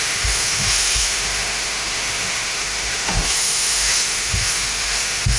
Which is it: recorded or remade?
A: remade